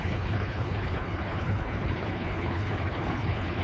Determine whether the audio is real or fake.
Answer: fake